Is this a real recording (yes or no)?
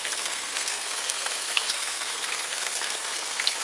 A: no